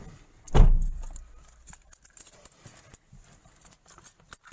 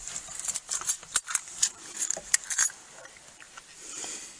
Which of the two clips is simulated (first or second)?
second